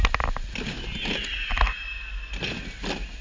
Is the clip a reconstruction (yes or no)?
no